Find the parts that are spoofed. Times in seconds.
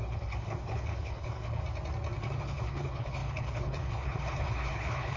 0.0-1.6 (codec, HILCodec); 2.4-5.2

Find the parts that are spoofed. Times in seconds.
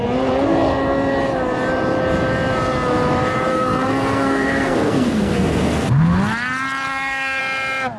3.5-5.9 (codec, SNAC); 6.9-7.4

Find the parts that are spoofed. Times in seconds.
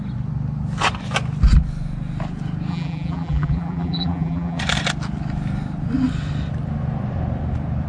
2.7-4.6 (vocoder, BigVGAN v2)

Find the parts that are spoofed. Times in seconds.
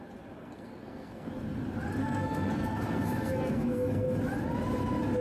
0.4-1.3 (codec, SNAC); 2.0-4.2